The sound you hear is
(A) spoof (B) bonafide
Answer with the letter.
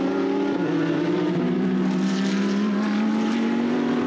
A